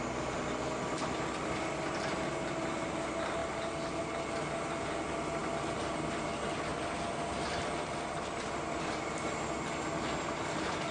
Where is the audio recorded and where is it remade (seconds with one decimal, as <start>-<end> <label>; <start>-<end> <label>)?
0.0-10.9 recorded